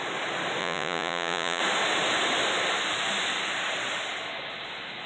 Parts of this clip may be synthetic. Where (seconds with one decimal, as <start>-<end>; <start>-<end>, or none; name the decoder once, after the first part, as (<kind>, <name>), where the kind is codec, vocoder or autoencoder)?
0.6-1.6 (vocoder, Vocos)